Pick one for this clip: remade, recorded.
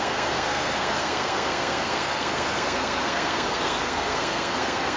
remade